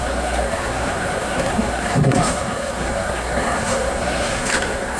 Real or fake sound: fake